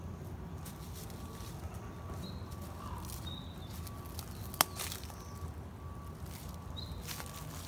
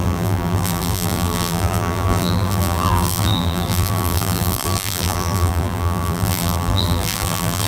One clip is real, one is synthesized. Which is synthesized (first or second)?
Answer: second